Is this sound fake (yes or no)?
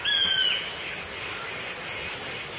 no